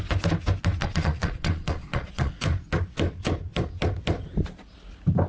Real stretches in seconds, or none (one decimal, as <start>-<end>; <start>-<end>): 0.0-0.8; 2.3-5.3